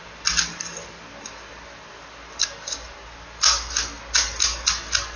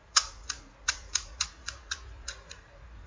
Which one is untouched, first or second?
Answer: first